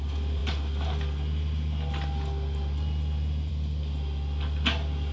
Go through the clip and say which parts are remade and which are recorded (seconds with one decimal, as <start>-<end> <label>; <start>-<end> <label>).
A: 0.0-5.1 recorded